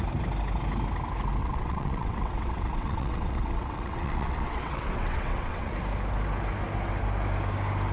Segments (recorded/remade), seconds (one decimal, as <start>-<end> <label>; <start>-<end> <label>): 0.0-1.4 recorded; 1.4-5.7 remade; 5.7-7.9 recorded